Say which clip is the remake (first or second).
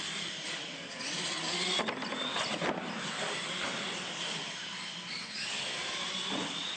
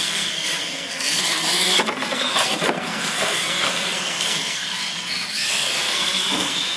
second